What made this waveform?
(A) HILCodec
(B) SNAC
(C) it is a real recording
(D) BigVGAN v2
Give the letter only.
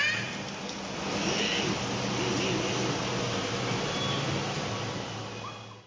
C